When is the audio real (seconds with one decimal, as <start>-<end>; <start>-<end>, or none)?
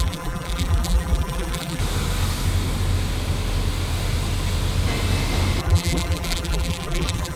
1.8-5.6